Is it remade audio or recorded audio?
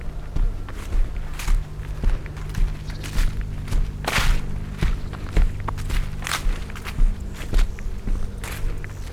recorded